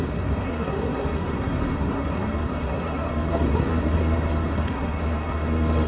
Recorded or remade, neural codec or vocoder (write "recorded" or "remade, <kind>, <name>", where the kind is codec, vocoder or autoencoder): remade, codec, SNAC